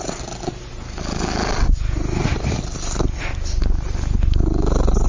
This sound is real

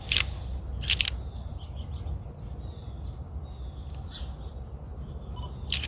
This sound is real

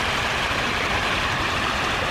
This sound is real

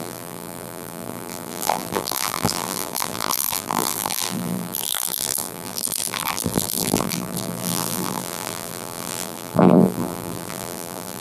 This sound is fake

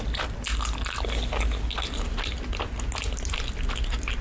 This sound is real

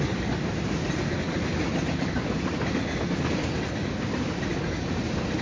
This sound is real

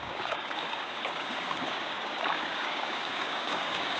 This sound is fake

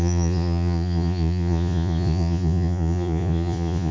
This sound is fake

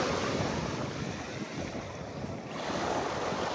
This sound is real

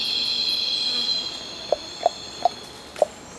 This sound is real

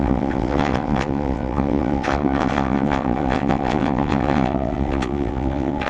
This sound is fake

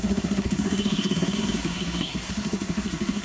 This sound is fake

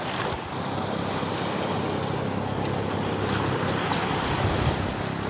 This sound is real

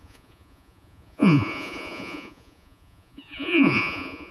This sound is fake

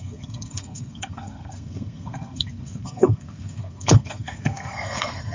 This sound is fake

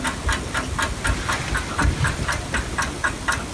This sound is real